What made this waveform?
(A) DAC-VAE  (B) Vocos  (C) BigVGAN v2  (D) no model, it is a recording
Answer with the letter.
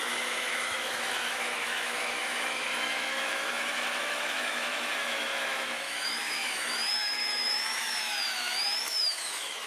A